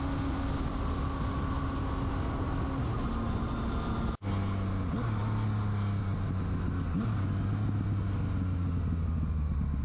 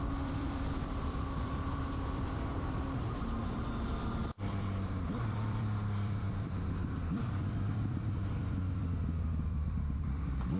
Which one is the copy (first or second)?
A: second